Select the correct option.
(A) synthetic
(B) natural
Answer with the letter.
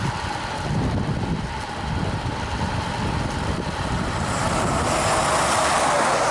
B